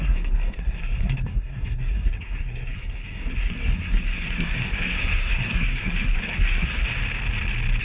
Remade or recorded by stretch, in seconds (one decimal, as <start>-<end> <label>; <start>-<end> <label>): 0.0-6.9 remade; 6.9-7.8 recorded